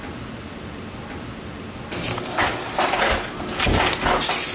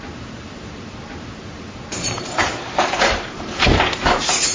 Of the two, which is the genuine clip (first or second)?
first